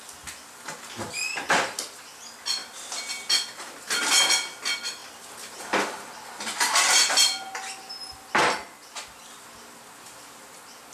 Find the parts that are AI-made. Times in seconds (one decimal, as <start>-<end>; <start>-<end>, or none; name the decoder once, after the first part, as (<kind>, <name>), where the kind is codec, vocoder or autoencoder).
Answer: none